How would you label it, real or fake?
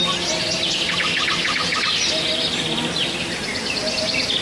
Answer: real